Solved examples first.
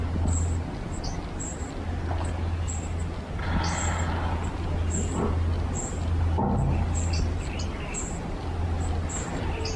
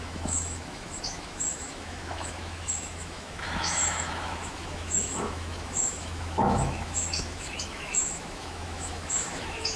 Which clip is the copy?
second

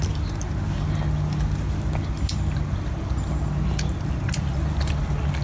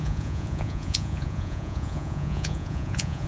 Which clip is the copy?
second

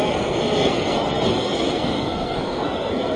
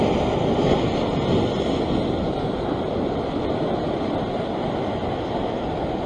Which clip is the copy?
first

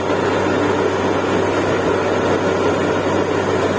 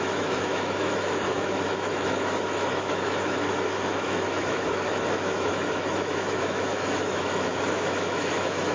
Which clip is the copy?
second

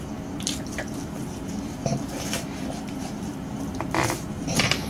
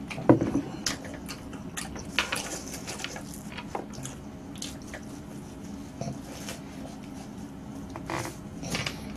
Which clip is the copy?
first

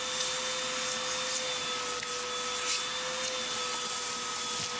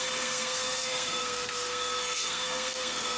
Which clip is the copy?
second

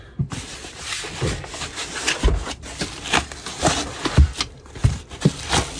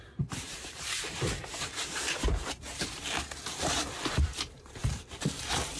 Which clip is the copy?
second